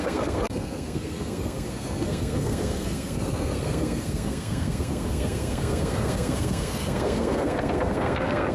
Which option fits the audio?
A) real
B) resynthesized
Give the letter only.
B